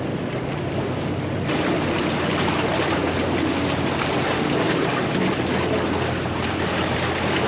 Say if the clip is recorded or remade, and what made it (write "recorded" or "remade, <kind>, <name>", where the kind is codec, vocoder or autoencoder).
recorded